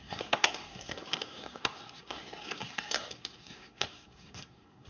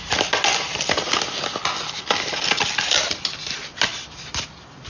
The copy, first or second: first